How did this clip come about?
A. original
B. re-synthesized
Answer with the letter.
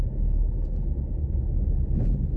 A